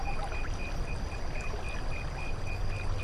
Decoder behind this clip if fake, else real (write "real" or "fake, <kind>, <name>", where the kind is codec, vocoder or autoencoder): real